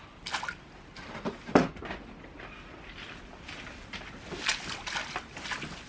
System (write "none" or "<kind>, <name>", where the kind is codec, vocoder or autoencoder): none